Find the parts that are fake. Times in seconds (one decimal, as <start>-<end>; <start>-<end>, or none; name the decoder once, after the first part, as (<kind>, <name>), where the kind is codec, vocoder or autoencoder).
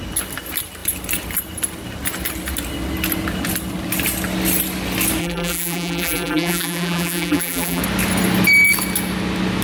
5.2-7.8 (vocoder, BigVGAN v2)